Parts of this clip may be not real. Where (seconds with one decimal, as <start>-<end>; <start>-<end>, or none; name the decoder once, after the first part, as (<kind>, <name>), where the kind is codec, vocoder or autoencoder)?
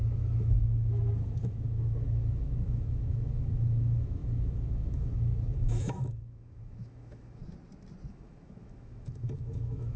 0.0-7.4 (autoencoder, DAC-VAE); 8.1-10.0